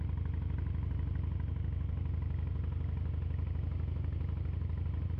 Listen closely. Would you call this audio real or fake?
real